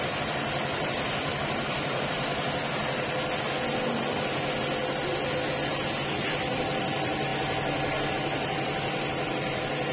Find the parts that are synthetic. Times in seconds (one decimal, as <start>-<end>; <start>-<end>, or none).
0.0-2.3; 5.7-7.3; 8.1-9.9